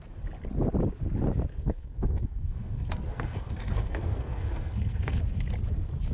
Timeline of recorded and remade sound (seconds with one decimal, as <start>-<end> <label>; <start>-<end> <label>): 0.0-1.5 recorded; 1.5-5.2 remade; 5.2-6.1 recorded